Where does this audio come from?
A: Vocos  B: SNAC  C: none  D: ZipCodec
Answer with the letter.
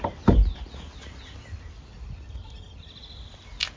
C